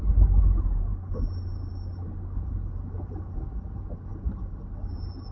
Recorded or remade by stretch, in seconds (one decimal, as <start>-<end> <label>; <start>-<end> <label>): 0.0-5.3 recorded